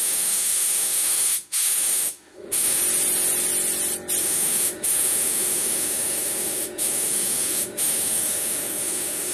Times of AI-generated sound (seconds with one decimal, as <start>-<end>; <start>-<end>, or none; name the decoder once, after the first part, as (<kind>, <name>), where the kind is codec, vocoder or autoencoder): 0.0-2.8 (autoencoder, DAC-VAE); 4.2-9.3